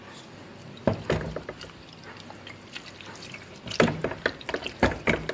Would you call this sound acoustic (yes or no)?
yes